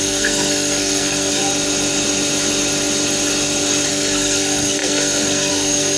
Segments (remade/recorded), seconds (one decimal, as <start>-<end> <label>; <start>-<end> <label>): 0.0-1.4 remade; 1.4-3.9 recorded; 3.9-6.0 remade